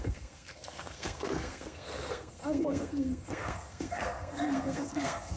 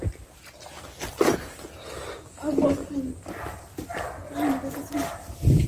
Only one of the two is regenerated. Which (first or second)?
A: first